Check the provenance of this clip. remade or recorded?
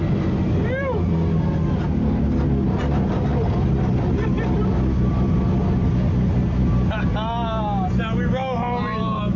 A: recorded